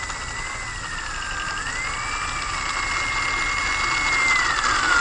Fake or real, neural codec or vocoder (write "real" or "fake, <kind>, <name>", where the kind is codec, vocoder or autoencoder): real